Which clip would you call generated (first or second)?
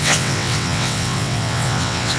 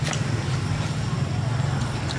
first